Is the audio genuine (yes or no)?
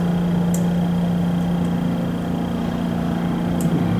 yes